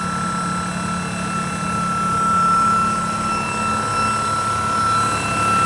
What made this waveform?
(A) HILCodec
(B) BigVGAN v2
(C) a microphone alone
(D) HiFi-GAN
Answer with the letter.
C